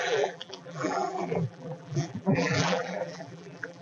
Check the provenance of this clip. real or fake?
fake